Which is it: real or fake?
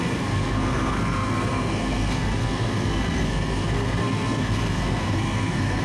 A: fake